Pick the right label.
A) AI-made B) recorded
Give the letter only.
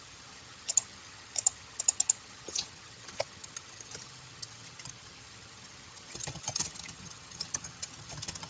A